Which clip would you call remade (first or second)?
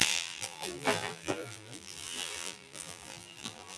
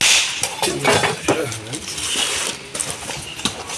first